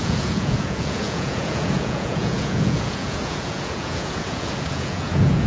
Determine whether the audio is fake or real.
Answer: fake